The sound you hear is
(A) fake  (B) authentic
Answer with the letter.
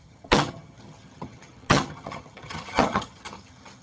A